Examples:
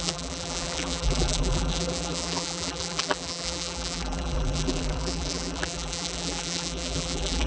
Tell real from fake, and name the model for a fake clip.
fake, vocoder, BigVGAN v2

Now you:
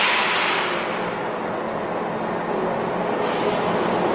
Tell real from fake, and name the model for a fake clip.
real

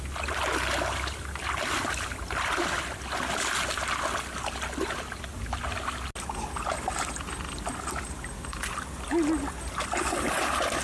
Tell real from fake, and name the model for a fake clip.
real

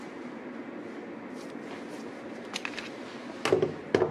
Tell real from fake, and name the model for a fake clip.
real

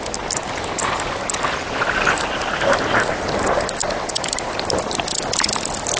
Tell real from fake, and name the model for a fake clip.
real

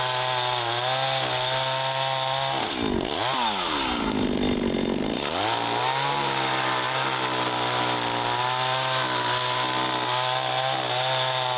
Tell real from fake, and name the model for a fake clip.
real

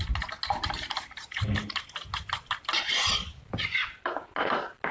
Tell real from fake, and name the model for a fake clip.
real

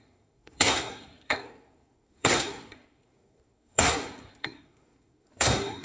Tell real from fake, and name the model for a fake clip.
fake, codec, SNAC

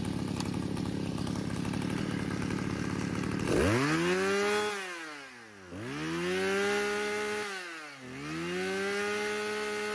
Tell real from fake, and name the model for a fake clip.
real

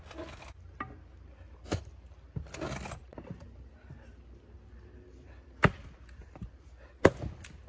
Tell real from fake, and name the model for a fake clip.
real